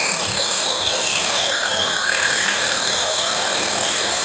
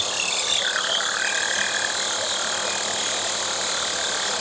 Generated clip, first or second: first